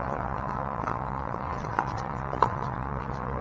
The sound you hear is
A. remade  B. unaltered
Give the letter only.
A